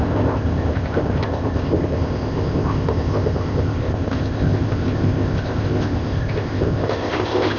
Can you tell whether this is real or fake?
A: fake